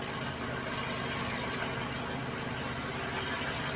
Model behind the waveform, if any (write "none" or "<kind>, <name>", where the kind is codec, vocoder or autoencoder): none